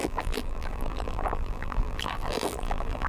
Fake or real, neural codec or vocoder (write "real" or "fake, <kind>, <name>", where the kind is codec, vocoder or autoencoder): fake, vocoder, BigVGAN v2